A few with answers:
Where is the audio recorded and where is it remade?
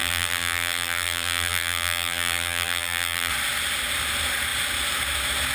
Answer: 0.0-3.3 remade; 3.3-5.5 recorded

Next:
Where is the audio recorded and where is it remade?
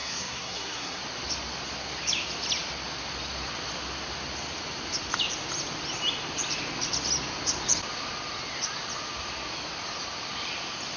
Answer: 0.0-1.0 remade; 1.0-11.0 recorded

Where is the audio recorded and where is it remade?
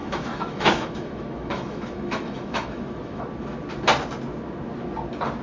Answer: 0.0-3.2 remade; 3.2-5.4 recorded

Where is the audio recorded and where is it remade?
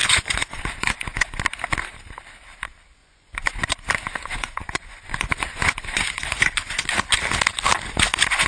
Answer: 0.0-1.4 remade; 1.4-3.0 recorded; 3.0-7.0 remade; 7.0-8.5 recorded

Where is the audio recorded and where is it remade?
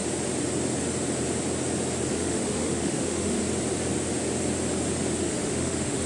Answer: 0.0-2.1 recorded; 2.1-3.4 remade; 3.4-5.2 recorded; 5.2-6.1 remade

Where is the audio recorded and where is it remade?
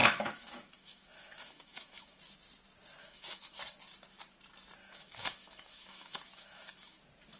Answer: 0.0-2.2 remade; 2.2-3.0 recorded; 3.0-3.6 remade; 3.6-4.8 recorded; 4.8-7.0 remade; 7.0-7.4 recorded